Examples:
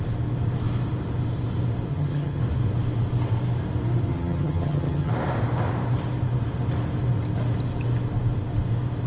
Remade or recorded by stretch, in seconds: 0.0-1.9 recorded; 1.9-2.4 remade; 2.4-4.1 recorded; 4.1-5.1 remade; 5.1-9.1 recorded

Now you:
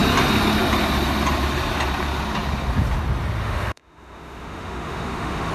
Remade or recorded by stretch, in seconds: 0.0-3.4 recorded; 3.4-5.5 remade

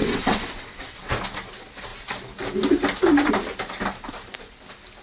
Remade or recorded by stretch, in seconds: 0.0-1.1 remade; 1.1-5.0 recorded